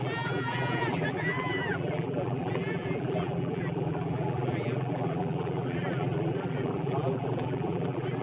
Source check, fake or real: fake